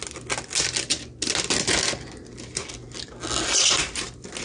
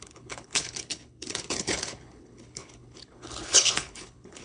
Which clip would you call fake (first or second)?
second